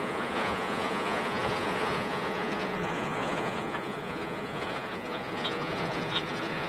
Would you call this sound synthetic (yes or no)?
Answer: yes